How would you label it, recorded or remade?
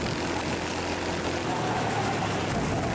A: recorded